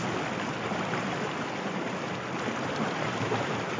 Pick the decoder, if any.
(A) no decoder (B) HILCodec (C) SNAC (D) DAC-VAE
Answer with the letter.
A